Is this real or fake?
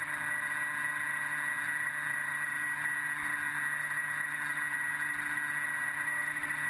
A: real